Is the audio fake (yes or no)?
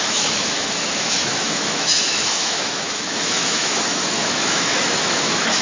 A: yes